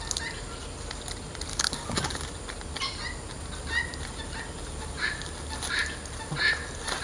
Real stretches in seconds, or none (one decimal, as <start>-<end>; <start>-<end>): 0.0-1.5; 2.3-7.0